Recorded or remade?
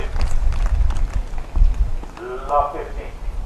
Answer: recorded